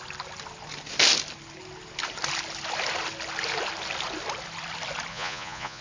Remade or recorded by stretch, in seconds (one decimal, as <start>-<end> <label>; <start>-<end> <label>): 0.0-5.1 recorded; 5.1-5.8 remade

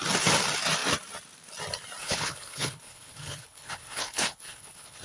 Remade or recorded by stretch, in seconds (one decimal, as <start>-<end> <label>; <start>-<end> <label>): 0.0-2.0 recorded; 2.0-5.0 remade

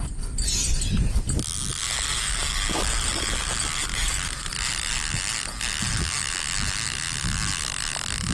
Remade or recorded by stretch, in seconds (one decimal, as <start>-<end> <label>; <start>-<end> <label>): 0.0-3.9 recorded; 3.9-4.5 remade; 4.5-8.3 recorded

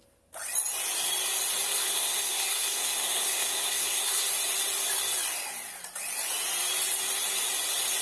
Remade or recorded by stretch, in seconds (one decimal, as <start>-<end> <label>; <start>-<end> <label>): 0.0-1.7 recorded; 1.7-4.3 remade; 4.3-8.0 recorded

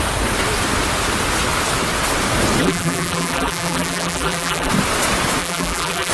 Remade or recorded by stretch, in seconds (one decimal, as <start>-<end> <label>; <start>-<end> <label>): 0.0-2.6 recorded; 2.6-4.7 remade; 4.7-5.4 recorded; 5.4-6.1 remade

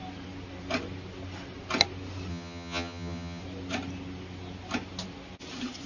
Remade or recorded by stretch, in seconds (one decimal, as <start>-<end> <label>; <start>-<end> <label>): 0.0-2.3 recorded; 2.3-3.4 remade; 3.4-5.9 recorded

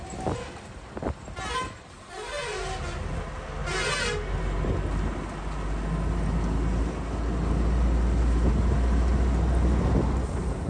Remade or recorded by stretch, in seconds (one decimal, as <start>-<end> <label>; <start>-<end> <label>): 0.0-10.7 recorded

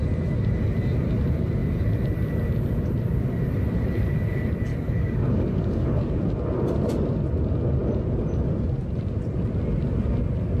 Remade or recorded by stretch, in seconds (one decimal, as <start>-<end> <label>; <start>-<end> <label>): 0.0-4.7 recorded; 4.7-6.2 remade; 6.2-10.6 recorded